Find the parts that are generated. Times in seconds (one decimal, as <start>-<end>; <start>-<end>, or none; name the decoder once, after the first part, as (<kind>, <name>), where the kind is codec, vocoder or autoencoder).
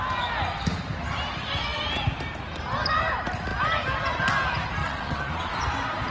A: 4.8-5.5 (vocoder, Vocos)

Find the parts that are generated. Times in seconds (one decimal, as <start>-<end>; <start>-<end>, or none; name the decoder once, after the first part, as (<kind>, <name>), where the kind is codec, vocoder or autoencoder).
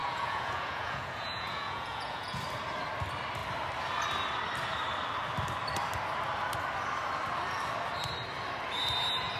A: 0.0-2.4 (vocoder, Vocos)